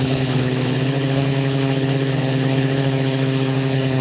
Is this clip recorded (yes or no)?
no